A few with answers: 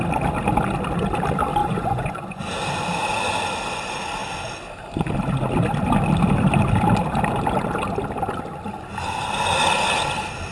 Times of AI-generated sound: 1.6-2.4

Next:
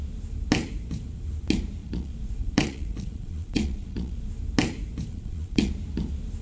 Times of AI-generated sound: 1.8-4.3; 5.1-5.7

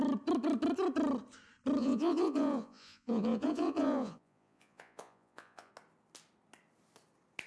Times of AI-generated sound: 1.8-5.7

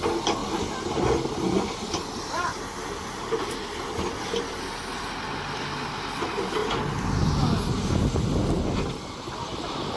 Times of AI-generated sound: none

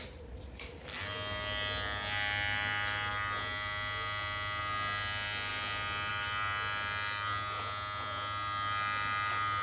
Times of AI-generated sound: none

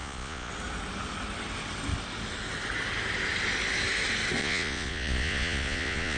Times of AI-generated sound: 0.0-0.5; 4.4-6.2

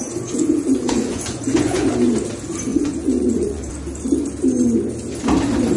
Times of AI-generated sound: 0.0-1.9; 2.7-3.6

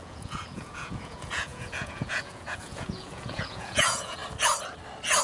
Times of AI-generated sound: 0.0-4.2